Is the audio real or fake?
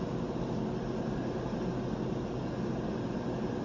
real